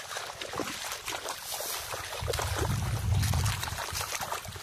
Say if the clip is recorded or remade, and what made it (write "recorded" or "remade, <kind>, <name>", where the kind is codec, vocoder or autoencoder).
recorded